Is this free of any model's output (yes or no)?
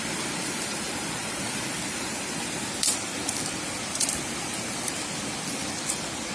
no